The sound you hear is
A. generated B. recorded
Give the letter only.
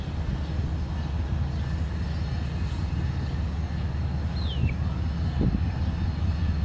B